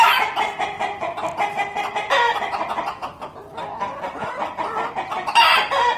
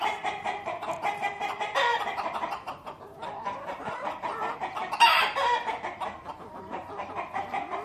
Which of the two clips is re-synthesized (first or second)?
second